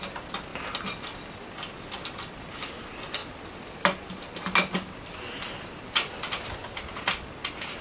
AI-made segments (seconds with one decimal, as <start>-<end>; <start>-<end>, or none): none